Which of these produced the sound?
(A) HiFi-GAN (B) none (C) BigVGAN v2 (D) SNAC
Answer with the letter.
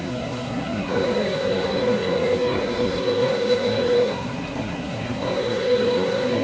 D